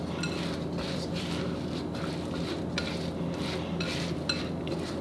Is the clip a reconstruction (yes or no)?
no